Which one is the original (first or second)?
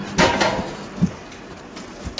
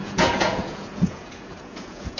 first